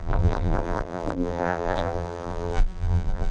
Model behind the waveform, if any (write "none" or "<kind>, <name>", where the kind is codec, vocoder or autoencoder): vocoder, BigVGAN v2